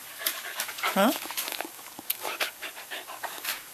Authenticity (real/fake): fake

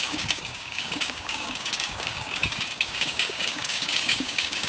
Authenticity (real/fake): fake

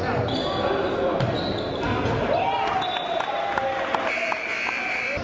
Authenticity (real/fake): real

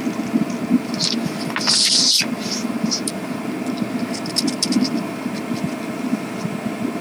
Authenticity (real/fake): real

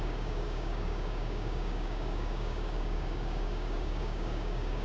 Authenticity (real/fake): fake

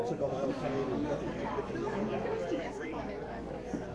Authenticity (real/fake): fake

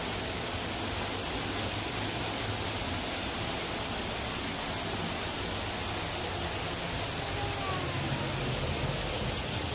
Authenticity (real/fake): real